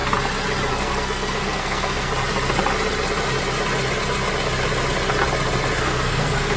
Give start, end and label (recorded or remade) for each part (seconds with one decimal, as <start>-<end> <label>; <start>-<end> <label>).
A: 0.0-0.7 recorded; 0.7-2.1 remade; 2.1-5.8 recorded; 5.8-6.6 remade